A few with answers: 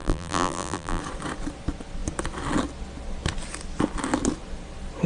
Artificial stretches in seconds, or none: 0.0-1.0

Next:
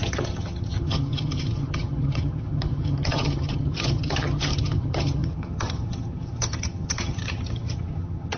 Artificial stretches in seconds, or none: 0.0-8.4

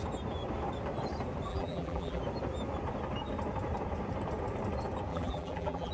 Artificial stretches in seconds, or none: 1.5-2.2; 5.1-5.9

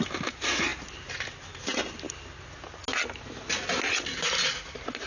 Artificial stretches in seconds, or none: none

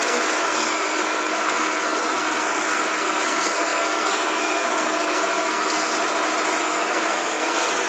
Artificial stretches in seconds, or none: 0.0-5.9; 6.6-7.9

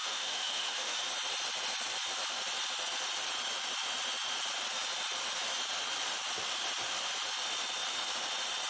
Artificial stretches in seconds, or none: 0.0-1.0

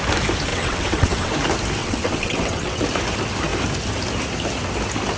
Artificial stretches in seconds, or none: 0.5-1.3; 1.8-2.8

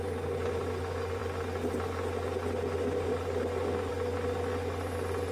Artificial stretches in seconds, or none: none